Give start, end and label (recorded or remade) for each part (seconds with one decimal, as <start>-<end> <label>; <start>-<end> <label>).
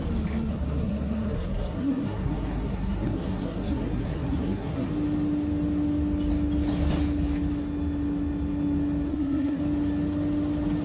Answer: 0.0-0.5 recorded; 0.5-4.9 remade; 4.9-9.1 recorded; 9.1-9.6 remade; 9.6-10.8 recorded